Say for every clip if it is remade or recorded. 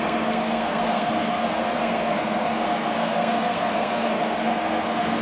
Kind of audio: remade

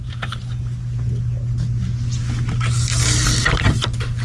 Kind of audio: recorded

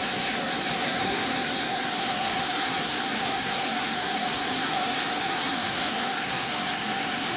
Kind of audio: remade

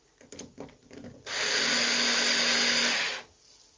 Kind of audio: recorded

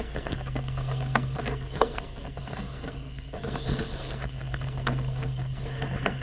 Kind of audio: remade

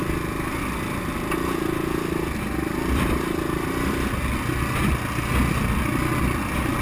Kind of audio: recorded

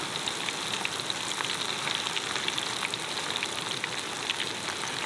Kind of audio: recorded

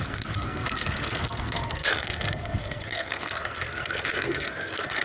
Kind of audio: remade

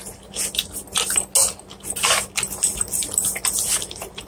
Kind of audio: recorded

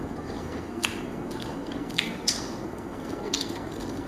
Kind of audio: remade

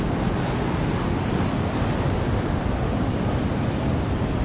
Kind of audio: recorded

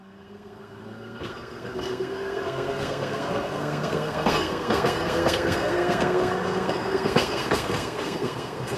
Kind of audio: remade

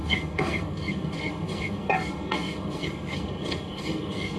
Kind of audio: remade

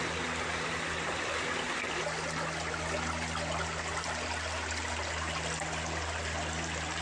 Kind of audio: recorded